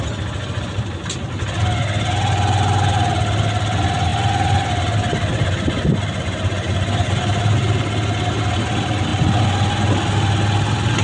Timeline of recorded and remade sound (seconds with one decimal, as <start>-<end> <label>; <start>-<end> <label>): 0.0-11.0 recorded